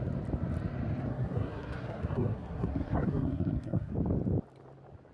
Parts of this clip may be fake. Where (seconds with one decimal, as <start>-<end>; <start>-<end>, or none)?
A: 1.1-3.9